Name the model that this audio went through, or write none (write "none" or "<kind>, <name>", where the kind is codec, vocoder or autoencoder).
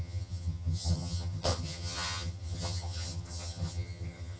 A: vocoder, HiFi-GAN